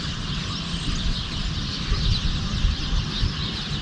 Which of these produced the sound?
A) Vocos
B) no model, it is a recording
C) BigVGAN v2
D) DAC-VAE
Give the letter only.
B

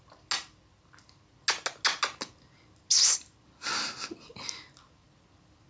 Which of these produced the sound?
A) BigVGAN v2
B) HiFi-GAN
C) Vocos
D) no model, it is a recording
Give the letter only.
D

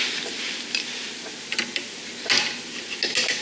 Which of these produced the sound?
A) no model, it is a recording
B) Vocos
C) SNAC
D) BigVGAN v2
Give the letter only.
A